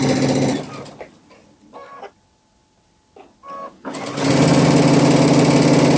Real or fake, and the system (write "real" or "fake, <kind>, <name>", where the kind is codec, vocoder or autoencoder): real